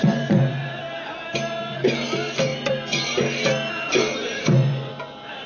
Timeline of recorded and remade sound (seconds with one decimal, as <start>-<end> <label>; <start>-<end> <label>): 0.0-0.8 remade; 0.8-4.2 recorded; 4.2-4.9 remade; 4.9-5.5 recorded